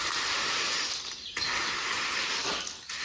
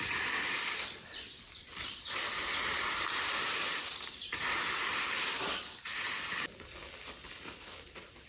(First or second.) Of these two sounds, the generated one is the second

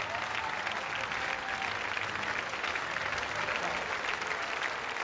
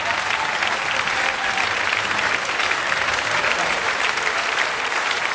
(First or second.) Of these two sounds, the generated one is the second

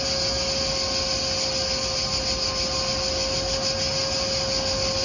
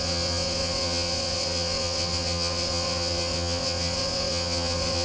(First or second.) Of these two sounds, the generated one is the second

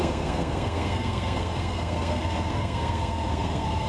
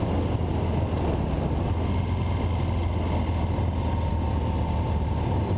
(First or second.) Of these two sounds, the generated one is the first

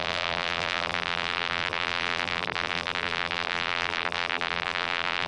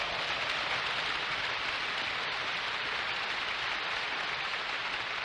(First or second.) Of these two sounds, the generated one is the first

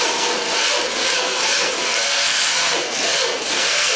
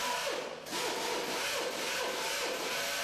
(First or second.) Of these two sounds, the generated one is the first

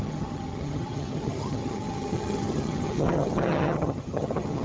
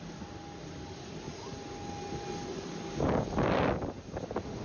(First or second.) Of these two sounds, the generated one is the first